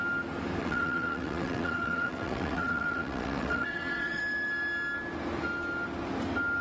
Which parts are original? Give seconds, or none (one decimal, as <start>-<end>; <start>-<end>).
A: 0.0-0.6; 4.2-6.6